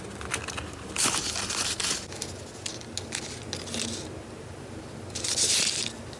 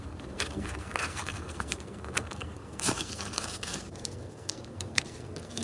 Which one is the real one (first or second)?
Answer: first